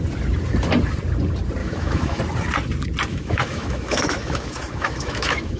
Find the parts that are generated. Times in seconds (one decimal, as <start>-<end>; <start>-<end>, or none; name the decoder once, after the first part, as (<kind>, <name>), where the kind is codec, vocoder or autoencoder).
1.6-2.2 (autoencoder, DAC-VAE); 3.1-5.6